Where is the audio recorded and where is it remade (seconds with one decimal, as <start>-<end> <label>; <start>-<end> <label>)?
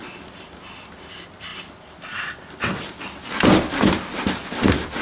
0.0-5.0 recorded